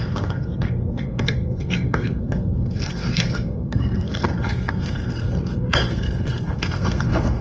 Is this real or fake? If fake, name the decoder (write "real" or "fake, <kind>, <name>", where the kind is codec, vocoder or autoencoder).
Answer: fake, codec, SNAC